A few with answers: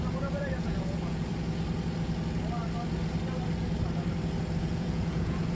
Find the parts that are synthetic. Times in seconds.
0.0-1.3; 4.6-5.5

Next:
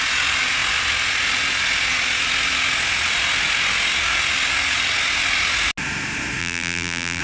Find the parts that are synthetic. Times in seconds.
6.4-7.2

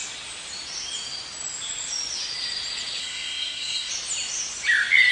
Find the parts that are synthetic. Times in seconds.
3.0-3.9

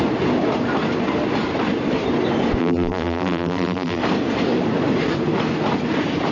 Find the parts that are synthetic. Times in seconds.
2.6-4.0

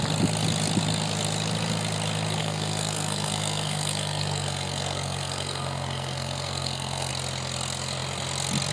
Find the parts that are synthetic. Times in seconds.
2.4-7.1

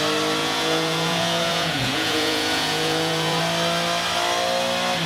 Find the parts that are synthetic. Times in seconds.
0.4-3.4

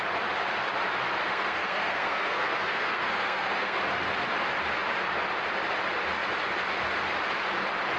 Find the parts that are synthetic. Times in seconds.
1.2-3.8